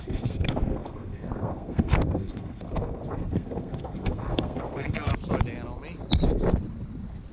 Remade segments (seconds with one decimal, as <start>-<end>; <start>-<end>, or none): 0.0-5.1